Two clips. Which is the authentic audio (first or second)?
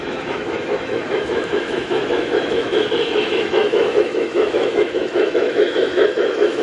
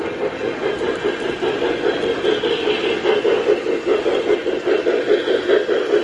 second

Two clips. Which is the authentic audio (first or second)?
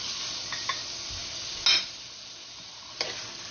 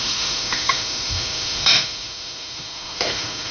first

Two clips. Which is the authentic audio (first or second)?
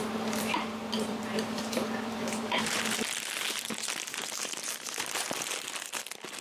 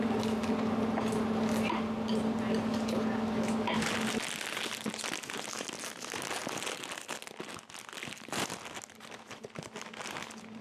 second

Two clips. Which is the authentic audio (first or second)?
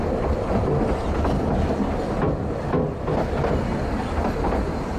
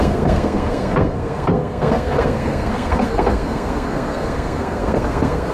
first